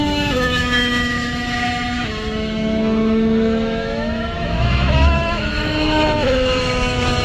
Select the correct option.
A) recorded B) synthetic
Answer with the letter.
B